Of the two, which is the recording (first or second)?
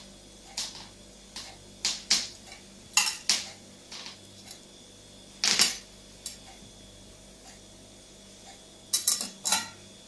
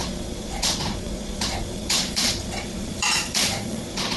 first